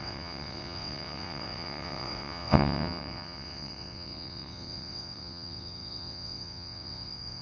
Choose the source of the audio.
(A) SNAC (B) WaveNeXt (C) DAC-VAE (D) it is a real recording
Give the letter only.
B